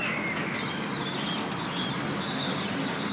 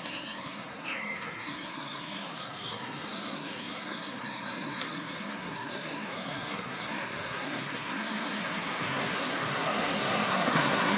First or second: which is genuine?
first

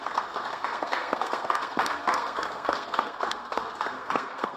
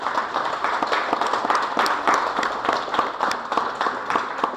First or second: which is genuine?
second